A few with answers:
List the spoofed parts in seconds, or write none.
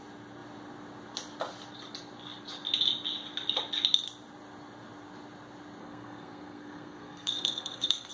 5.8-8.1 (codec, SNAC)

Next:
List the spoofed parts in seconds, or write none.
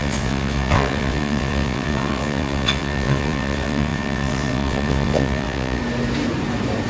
0.0-5.8 (vocoder, WaveNeXt)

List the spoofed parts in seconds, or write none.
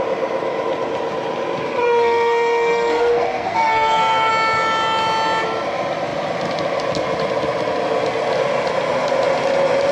1.8-4.3 (codec, SNAC)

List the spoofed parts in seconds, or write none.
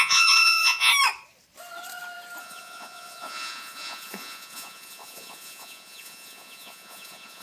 0.0-0.9 (vocoder, Vocos); 2.4-7.4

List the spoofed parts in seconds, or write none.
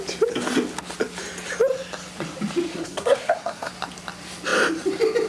2.7-3.7 (codec, SNAC)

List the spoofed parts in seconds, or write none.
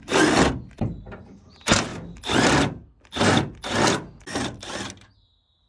none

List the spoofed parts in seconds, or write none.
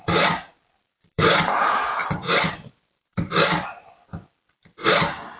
0.5-1.3 (vocoder, BigVGAN v2); 2.0-5.4